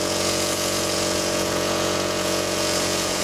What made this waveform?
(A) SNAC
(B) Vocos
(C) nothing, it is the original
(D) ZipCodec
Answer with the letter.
B